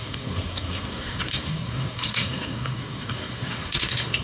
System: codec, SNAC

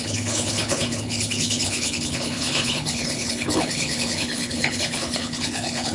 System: codec, HILCodec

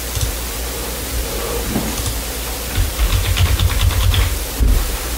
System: none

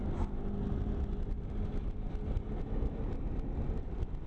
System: none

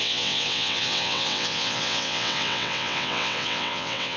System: vocoder, WaveNeXt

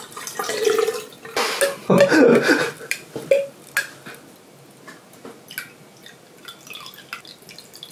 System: none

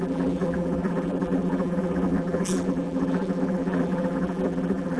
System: vocoder, BigVGAN v2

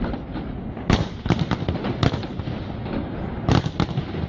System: none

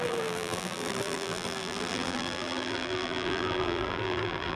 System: vocoder, BigVGAN v2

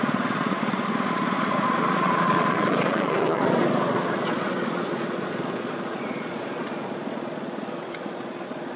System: vocoder, Vocos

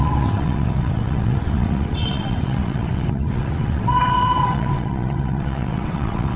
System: vocoder, WaveNeXt